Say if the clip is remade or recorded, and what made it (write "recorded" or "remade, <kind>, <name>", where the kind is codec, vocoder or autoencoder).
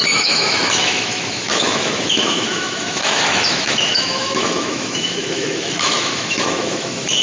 remade, autoencoder, DAC-VAE